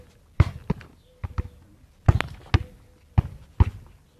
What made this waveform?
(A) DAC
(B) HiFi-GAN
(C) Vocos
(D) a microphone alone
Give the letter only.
D